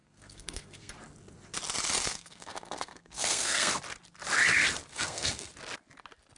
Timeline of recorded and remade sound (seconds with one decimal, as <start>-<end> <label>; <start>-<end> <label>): 0.0-0.9 remade; 0.9-2.0 recorded; 2.0-3.7 remade; 3.7-4.9 recorded; 4.9-5.5 remade; 5.5-6.4 recorded